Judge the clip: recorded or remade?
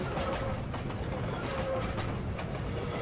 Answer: recorded